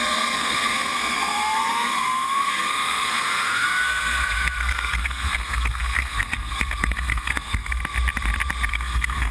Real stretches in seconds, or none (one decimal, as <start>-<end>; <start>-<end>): 7.8-8.7